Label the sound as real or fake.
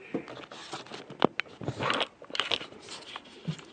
real